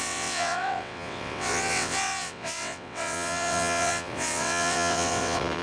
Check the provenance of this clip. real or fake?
fake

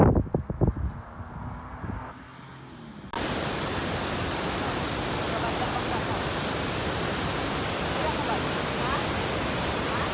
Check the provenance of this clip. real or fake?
real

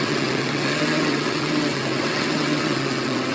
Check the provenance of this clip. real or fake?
fake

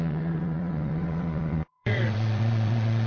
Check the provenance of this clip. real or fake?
fake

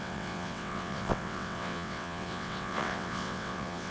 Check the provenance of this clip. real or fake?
fake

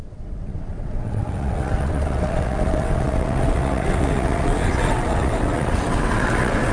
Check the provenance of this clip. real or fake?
fake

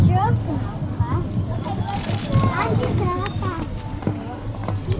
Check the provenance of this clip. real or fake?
real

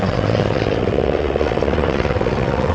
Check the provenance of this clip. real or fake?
fake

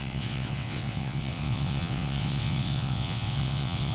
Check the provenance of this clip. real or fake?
fake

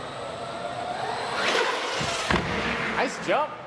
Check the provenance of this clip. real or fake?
real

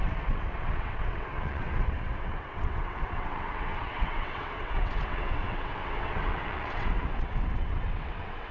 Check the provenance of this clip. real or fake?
fake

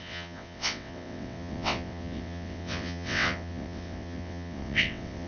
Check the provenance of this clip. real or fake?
fake